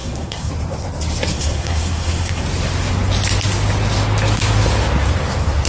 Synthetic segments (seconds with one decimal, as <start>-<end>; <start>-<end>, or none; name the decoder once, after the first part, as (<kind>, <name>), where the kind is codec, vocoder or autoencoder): 0.0-0.5 (codec, SNAC); 1.3-2.4